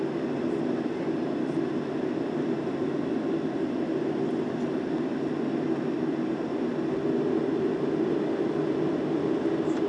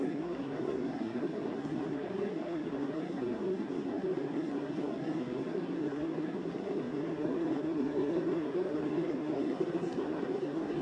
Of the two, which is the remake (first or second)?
second